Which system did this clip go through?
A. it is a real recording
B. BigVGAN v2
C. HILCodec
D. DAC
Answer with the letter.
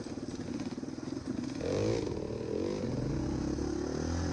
A